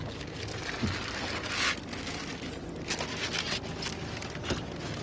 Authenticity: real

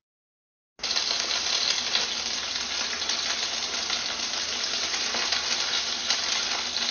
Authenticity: real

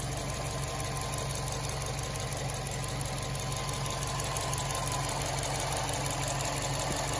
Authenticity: real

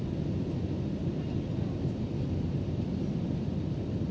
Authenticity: real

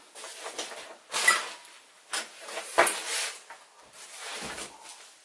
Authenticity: real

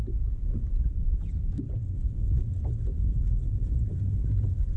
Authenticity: real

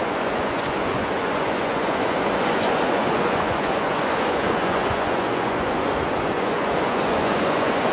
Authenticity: fake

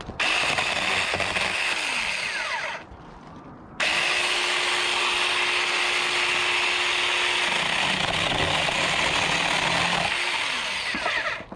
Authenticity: real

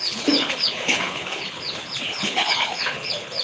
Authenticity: fake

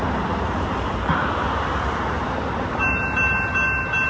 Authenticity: real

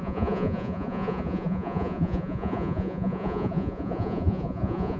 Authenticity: fake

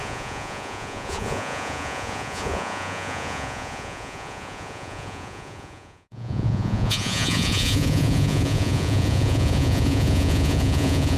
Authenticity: fake